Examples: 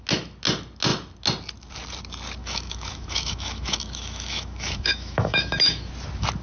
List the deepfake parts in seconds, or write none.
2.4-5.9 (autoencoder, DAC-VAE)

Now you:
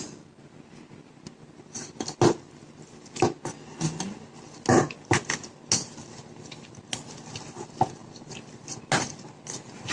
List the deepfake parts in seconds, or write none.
none